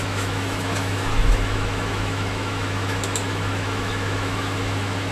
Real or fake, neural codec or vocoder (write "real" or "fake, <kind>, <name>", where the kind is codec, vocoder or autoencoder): fake, autoencoder, DAC-VAE